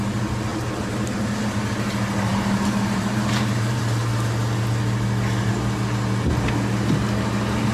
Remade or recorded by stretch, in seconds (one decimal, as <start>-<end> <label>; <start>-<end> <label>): 0.0-0.5 recorded; 0.5-1.2 remade; 1.2-2.3 recorded; 2.3-3.8 remade; 3.8-7.7 recorded

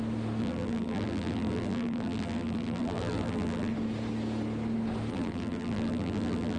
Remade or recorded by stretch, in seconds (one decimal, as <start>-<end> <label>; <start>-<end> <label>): 0.0-0.4 recorded; 0.4-3.7 remade; 3.7-5.1 recorded; 5.1-6.6 remade

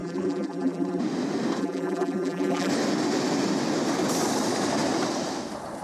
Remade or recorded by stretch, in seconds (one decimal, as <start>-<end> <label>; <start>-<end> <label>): 0.0-1.0 remade; 1.0-1.6 recorded; 1.6-2.7 remade; 2.7-5.8 recorded

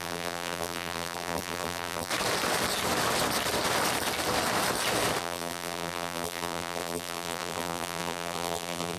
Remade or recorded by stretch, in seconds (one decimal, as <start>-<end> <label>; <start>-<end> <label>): 0.0-2.1 remade; 2.1-5.2 recorded; 5.2-9.0 remade

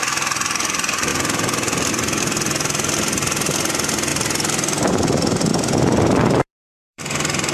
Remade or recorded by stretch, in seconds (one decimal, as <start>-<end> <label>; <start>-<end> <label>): 0.0-5.5 recorded; 5.5-7.0 remade; 7.0-7.5 recorded

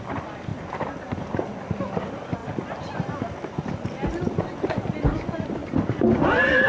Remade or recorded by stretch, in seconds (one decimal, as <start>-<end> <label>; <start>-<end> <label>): 0.0-0.5 recorded; 0.5-1.3 remade; 1.3-5.6 recorded; 5.6-6.7 remade

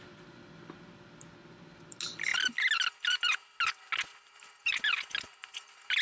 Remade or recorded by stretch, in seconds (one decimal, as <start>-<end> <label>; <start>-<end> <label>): 0.0-6.0 recorded